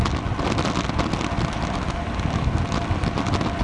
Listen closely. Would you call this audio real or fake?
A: real